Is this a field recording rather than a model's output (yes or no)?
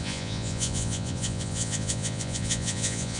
no